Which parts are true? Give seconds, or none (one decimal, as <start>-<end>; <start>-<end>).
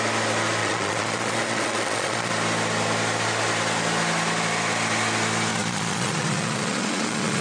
0.0-0.6; 2.3-5.5